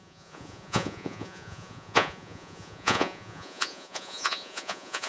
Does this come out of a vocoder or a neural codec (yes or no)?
yes